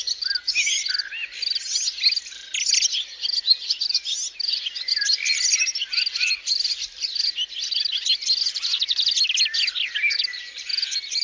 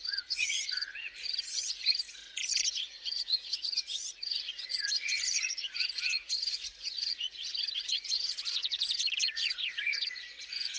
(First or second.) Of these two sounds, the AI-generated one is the second